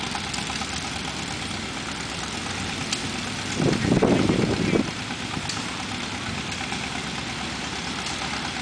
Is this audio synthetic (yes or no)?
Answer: no